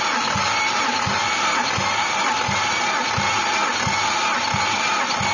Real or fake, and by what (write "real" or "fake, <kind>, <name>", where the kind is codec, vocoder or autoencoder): real